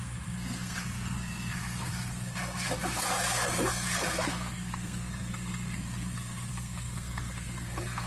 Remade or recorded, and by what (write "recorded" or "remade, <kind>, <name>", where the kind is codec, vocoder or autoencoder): remade, codec, SNAC